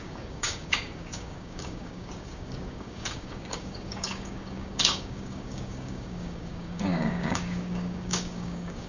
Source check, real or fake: fake